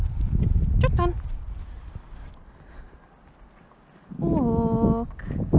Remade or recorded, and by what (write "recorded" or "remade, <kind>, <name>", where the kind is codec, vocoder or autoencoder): recorded